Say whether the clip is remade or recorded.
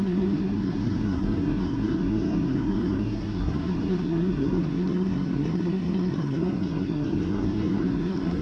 remade